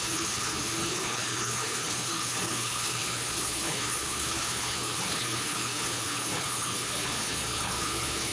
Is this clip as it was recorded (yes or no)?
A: no